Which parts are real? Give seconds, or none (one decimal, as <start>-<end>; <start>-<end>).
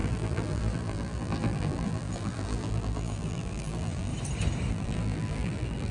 4.1-4.7